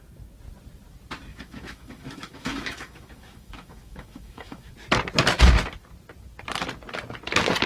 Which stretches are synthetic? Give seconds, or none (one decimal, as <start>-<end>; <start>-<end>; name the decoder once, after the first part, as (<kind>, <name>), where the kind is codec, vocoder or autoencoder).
1.3-4.7 (autoencoder, DAC-VAE)

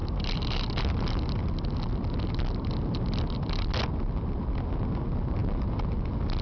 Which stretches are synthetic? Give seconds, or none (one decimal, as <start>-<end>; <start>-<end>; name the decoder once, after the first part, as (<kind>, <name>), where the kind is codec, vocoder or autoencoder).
none